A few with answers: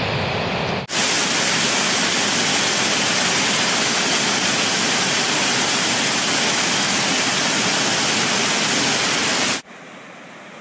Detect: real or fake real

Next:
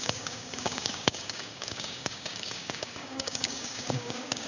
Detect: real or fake fake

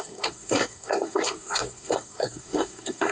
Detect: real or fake fake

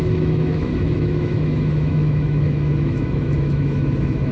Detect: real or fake fake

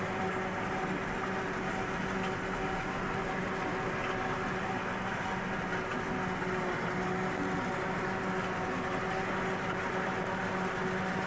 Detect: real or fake real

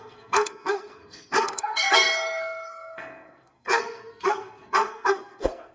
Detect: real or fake fake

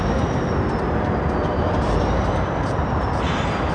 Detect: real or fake fake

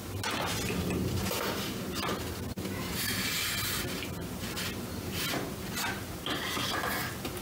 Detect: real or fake real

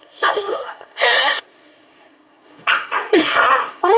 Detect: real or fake fake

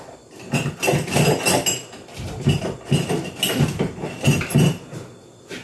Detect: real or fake real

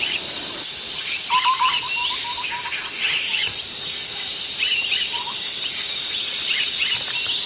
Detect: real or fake fake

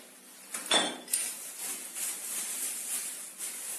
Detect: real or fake real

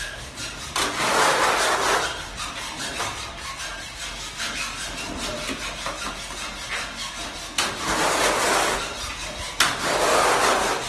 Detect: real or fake real